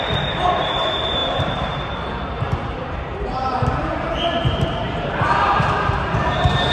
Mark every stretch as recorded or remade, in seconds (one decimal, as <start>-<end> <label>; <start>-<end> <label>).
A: 0.0-6.7 remade